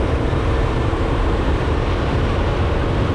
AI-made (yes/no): yes